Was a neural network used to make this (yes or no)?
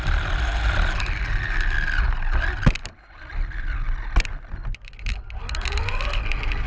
no